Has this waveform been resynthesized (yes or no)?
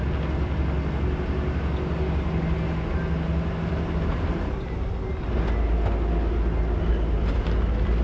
no